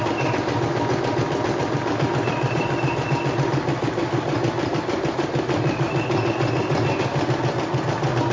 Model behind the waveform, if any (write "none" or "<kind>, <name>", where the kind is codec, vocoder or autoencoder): none